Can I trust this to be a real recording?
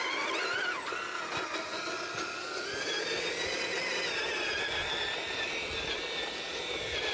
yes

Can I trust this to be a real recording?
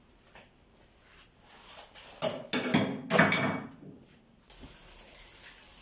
yes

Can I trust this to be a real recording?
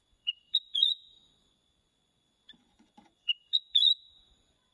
no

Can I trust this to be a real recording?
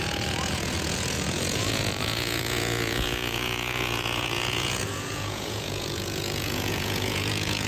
no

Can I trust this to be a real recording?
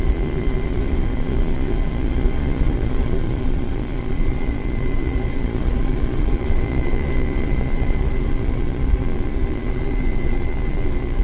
no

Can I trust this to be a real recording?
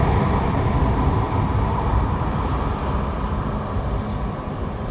yes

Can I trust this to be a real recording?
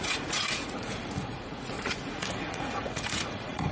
no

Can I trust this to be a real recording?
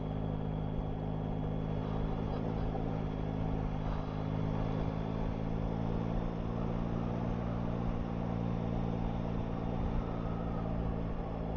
yes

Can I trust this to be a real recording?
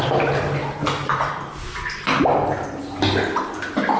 yes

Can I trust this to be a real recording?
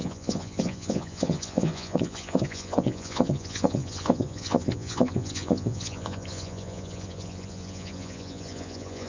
no